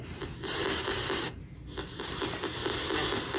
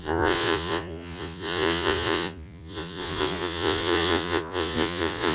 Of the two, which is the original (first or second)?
first